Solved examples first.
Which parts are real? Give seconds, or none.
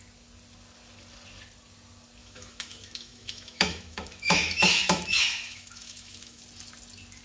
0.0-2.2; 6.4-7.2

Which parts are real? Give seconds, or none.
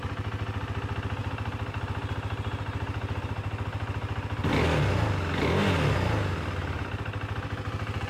0.0-8.1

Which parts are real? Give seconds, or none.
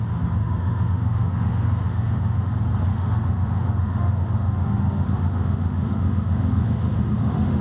0.0-0.4; 2.5-2.9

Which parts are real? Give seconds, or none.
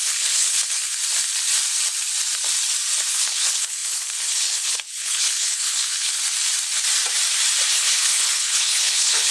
0.9-3.1; 6.2-7.7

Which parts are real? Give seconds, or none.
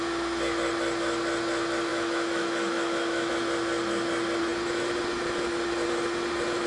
0.0-1.9; 3.3-6.7